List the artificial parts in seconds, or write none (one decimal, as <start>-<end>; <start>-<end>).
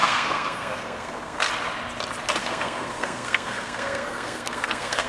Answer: 0.0-1.5; 2.4-5.1